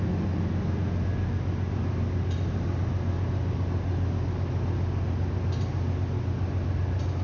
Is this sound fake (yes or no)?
no